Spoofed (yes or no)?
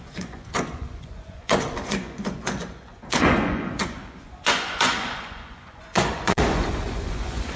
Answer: yes